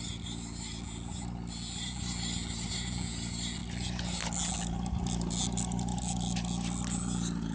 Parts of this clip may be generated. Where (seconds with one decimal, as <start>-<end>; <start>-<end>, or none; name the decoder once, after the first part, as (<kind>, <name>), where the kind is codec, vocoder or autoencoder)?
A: none